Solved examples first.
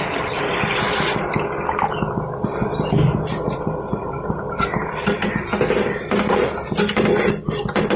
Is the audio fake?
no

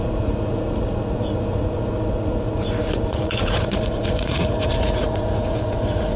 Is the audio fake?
yes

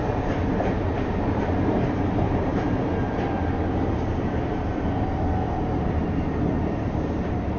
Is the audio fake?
yes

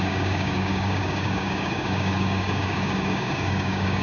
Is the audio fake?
yes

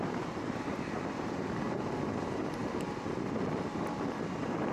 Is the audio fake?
yes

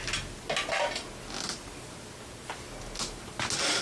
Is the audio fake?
no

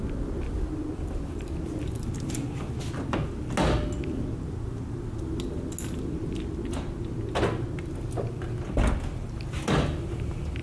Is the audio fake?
no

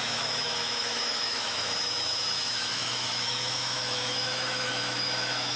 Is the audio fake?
yes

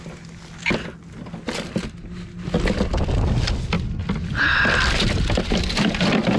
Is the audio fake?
no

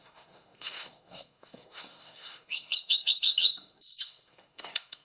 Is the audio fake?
yes